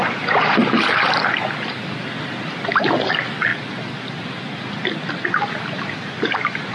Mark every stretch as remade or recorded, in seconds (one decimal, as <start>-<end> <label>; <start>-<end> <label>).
0.0-6.7 recorded